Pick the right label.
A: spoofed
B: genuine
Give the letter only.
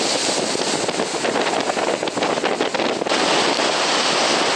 B